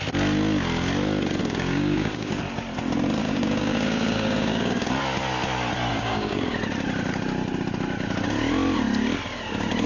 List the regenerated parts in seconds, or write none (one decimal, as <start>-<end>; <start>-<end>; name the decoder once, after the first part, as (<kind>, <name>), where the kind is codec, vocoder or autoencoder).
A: 1.4-2.4 (codec, DAC); 3.2-4.9; 5.9-6.6